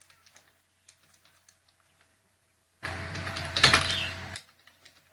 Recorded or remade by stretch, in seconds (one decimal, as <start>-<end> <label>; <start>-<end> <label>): 0.0-2.1 recorded; 2.1-3.8 remade; 3.8-5.1 recorded